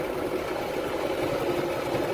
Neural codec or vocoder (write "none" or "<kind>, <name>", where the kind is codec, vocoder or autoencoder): none